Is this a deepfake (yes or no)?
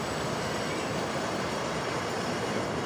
yes